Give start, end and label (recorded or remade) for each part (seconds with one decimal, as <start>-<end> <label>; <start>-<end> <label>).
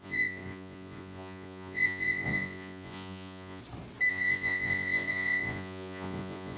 0.0-3.6 remade; 3.6-4.1 recorded; 4.1-6.6 remade